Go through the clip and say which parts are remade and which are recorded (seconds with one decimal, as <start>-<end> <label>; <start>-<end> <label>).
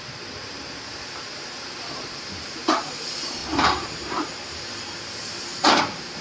0.0-6.2 remade